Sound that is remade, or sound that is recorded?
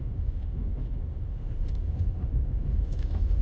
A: remade